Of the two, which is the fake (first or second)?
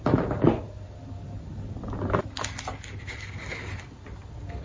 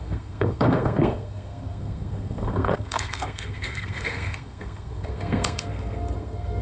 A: second